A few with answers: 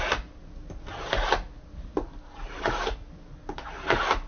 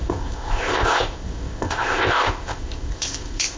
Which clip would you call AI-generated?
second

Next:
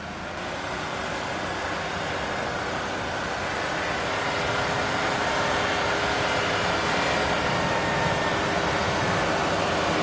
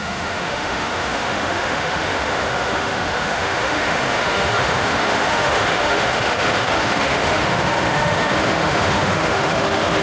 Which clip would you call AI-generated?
second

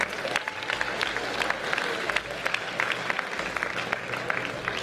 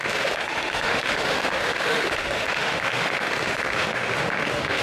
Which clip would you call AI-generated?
second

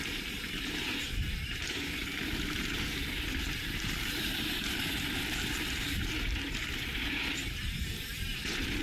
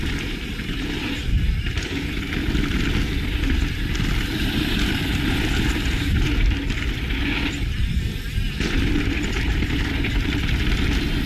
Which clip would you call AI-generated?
first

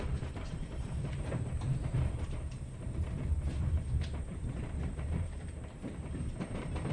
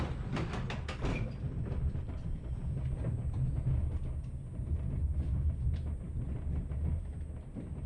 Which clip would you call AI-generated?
first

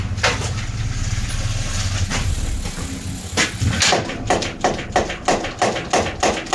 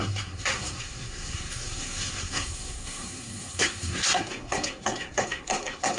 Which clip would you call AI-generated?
second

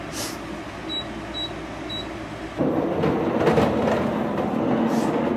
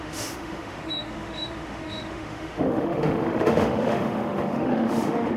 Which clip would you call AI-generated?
second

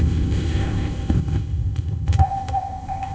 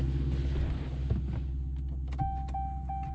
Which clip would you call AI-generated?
first